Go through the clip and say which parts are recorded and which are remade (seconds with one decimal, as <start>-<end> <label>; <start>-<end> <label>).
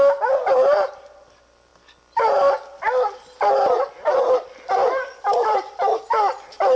0.0-4.8 recorded; 4.8-6.0 remade; 6.0-6.8 recorded